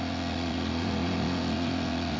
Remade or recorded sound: remade